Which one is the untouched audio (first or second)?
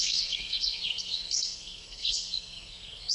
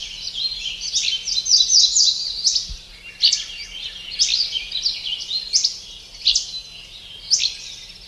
second